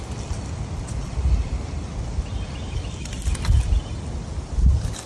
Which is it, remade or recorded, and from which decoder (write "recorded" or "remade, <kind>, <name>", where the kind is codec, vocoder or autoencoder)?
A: recorded